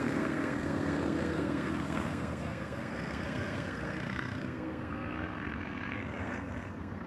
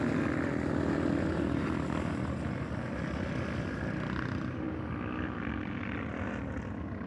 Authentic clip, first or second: second